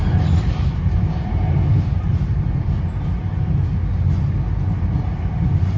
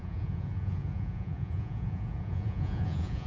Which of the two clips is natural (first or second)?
first